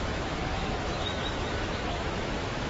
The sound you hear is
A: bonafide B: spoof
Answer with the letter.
B